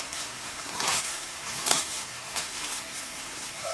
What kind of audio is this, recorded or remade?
remade